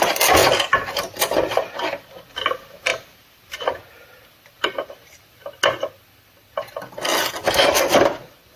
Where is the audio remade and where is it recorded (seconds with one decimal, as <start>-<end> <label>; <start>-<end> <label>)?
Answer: 0.0-2.9 recorded; 2.9-5.3 remade; 5.3-8.6 recorded

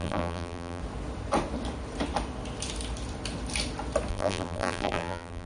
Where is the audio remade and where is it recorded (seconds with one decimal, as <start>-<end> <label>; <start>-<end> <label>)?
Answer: 0.0-0.8 remade; 0.8-4.1 recorded; 4.1-5.5 remade

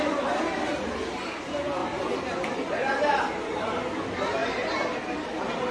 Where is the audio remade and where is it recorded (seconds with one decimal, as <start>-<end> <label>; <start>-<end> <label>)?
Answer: 0.0-1.8 recorded; 1.8-3.2 remade; 3.2-4.4 recorded; 4.4-5.3 remade; 5.3-5.7 recorded

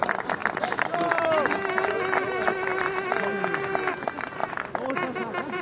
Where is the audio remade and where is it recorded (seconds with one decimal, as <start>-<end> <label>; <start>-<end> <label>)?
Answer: 0.0-0.4 recorded; 0.4-1.7 remade; 1.7-2.7 recorded; 2.7-3.6 remade; 3.6-5.6 recorded